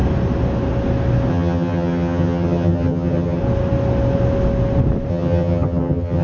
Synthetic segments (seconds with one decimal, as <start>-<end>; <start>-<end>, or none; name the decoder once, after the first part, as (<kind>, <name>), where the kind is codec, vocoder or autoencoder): 1.3-3.4 (vocoder, HiFi-GAN); 5.1-6.2